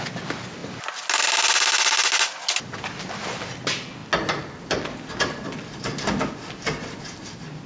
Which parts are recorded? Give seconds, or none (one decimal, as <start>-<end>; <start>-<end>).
0.0-7.7